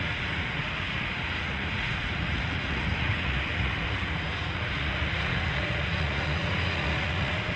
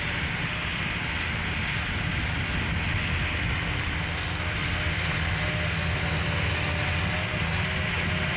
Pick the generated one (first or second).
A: first